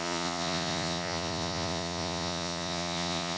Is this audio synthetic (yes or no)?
yes